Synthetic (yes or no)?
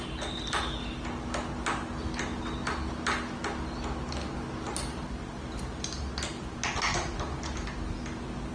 no